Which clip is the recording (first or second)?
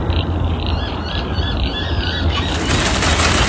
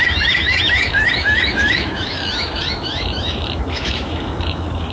first